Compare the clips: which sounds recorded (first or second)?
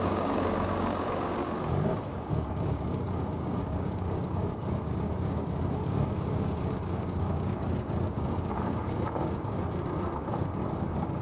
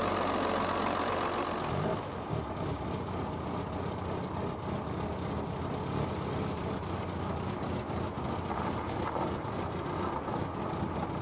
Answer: second